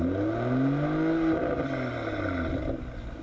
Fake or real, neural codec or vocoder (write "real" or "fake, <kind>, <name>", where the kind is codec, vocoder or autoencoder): real